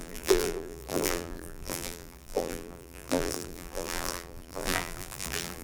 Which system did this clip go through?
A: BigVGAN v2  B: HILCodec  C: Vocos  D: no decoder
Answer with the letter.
A